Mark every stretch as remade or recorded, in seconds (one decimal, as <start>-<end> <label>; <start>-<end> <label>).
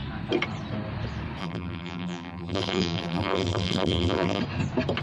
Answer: 0.0-1.4 recorded; 1.4-4.4 remade; 4.4-5.0 recorded